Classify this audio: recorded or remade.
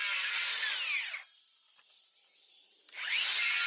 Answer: recorded